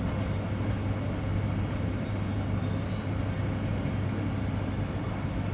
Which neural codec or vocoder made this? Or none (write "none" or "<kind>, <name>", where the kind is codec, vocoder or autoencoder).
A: none